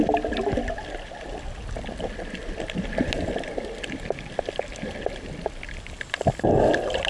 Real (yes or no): yes